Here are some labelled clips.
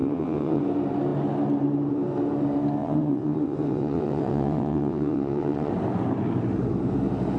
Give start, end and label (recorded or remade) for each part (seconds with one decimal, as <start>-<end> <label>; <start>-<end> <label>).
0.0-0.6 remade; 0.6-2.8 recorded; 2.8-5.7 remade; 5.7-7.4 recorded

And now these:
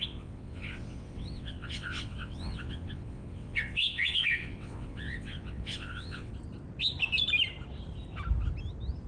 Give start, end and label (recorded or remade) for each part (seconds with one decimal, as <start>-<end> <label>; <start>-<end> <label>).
0.0-6.3 remade; 6.3-9.1 recorded

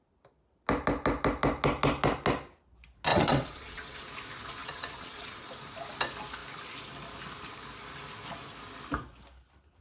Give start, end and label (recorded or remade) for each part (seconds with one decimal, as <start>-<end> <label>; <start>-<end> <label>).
0.0-3.1 recorded; 3.1-4.0 remade; 4.0-4.6 recorded; 4.6-5.5 remade; 5.5-9.8 recorded

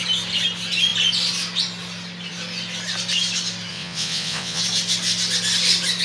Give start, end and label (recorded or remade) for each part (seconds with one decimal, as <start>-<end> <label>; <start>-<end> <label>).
0.0-3.7 recorded; 3.7-4.6 remade; 4.6-6.0 recorded

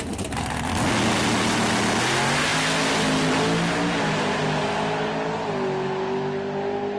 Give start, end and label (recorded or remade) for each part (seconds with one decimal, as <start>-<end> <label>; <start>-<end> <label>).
0.0-7.0 recorded

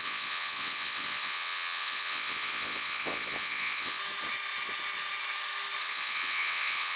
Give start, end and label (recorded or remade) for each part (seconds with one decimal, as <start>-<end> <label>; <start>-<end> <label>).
0.0-4.0 remade; 4.0-5.8 recorded; 5.8-7.0 remade

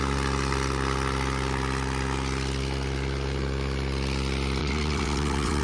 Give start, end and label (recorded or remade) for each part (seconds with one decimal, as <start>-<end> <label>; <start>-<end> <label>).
0.0-4.6 recorded; 4.6-5.6 remade